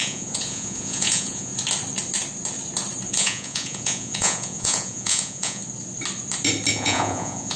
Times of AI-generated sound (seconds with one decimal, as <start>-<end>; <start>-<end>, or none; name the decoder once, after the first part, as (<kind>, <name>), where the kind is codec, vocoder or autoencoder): 0.0-1.5 (vocoder, Vocos); 3.1-5.6; 6.7-7.6